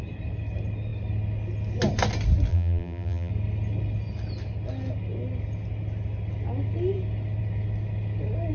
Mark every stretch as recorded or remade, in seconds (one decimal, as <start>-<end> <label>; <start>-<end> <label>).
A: 0.0-2.5 recorded; 2.5-3.3 remade; 3.3-8.5 recorded